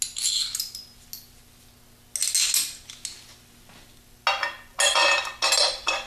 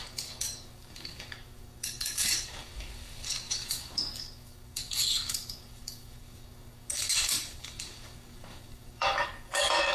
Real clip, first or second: first